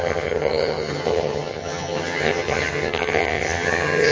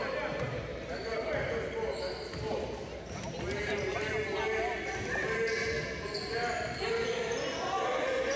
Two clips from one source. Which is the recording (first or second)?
second